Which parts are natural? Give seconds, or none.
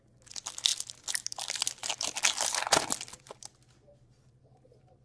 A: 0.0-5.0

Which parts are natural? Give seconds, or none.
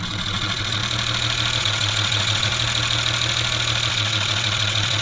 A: 0.8-1.6; 2.5-3.9